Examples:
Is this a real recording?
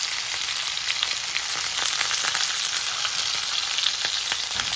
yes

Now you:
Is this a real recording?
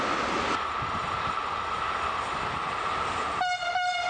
yes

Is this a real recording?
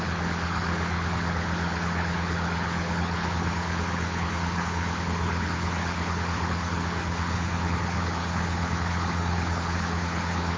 no